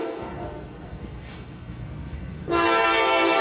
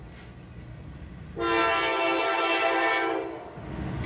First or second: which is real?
second